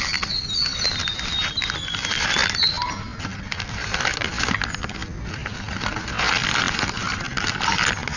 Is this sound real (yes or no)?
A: yes